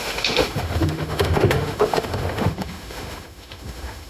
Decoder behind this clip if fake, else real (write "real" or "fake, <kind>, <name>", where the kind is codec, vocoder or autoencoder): fake, autoencoder, DAC-VAE